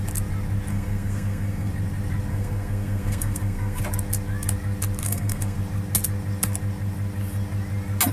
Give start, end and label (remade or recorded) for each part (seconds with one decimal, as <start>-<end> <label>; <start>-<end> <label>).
0.0-0.7 recorded; 0.7-1.7 remade; 1.7-2.3 recorded; 2.3-3.8 remade; 3.8-5.0 recorded; 5.0-5.6 remade; 5.6-8.1 recorded